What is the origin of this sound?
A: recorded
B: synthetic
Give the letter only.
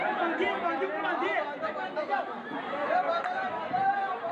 A